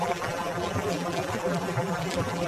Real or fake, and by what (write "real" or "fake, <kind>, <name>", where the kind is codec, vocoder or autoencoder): fake, vocoder, BigVGAN v2